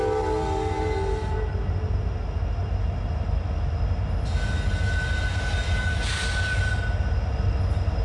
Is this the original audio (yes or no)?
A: yes